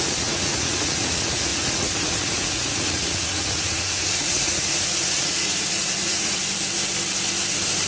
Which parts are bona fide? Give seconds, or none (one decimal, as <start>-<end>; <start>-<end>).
6.4-7.9